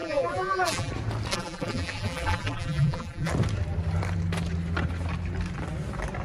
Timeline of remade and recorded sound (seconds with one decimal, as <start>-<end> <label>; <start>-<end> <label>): 0.0-0.9 remade; 0.9-1.3 recorded; 1.3-3.3 remade; 3.3-6.2 recorded